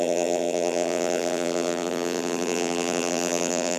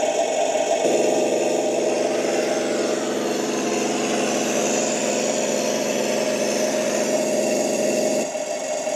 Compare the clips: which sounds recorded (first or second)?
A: second